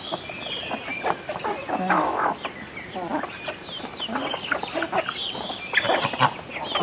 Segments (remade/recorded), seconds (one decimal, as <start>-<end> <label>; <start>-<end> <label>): 0.0-0.9 recorded; 0.9-1.6 remade; 1.6-3.1 recorded; 3.1-5.5 remade; 5.5-6.8 recorded